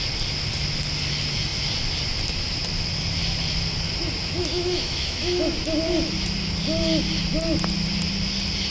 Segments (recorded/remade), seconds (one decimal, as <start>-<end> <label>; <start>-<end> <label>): 0.0-4.4 recorded; 4.4-5.5 remade; 5.5-8.7 recorded